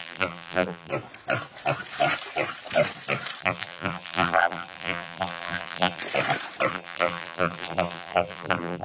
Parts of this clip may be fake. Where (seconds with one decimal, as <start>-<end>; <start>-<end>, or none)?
0.0-0.9; 3.4-6.0; 6.7-8.8